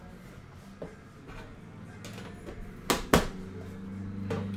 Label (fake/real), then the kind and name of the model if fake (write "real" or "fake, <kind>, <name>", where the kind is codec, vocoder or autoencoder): real